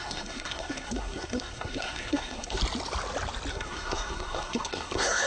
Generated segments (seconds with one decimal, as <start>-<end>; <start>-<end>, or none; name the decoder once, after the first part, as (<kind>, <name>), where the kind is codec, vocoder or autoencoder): 0.0-2.6 (codec, SNAC); 3.5-5.3